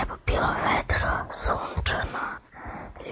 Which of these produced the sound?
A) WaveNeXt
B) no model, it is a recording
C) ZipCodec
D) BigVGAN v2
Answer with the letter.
B